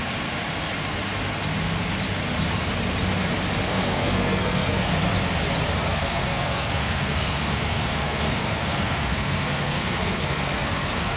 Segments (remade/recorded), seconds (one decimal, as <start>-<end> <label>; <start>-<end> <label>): 0.0-3.7 recorded; 3.7-4.9 remade; 4.9-5.9 recorded; 5.9-11.2 remade